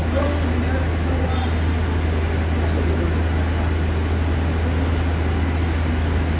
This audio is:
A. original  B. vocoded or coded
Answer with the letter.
A